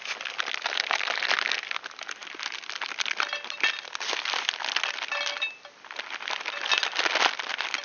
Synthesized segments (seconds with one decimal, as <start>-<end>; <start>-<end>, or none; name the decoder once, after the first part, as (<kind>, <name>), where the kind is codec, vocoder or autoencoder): none